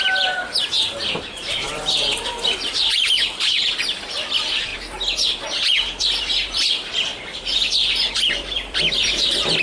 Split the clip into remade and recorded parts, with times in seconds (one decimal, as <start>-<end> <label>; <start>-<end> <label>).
0.0-4.7 remade; 4.7-8.1 recorded; 8.1-9.6 remade